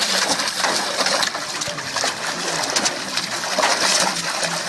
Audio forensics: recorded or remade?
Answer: recorded